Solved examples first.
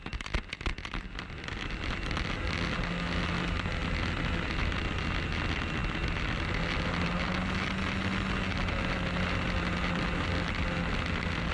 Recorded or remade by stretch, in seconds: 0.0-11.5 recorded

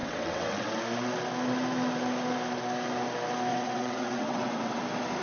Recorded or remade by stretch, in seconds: 0.0-0.8 remade; 0.8-3.5 recorded; 3.5-4.8 remade; 4.8-5.2 recorded

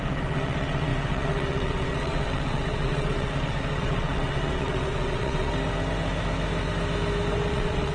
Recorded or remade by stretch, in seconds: 0.0-5.5 remade; 5.5-7.5 recorded; 7.5-7.9 remade